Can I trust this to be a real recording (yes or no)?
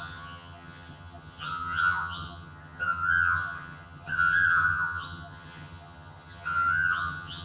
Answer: no